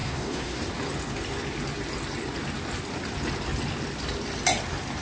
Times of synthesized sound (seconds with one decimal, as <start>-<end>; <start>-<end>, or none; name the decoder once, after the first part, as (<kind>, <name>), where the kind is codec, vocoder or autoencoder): 0.0-0.6 (codec, SNAC)